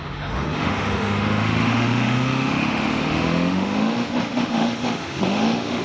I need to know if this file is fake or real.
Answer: fake